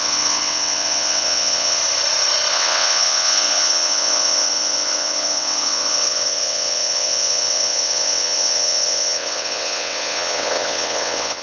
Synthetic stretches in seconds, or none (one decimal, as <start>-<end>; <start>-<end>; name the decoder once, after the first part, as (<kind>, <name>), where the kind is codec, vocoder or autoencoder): 0.0-1.8 (vocoder, WaveNeXt); 2.5-11.4